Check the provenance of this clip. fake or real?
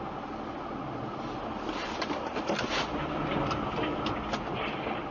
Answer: real